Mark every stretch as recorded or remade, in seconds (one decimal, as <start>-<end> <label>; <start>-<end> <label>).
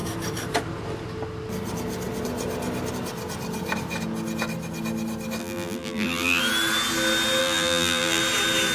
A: 0.0-5.4 recorded; 5.4-6.4 remade; 6.4-7.4 recorded; 7.4-8.2 remade; 8.2-8.7 recorded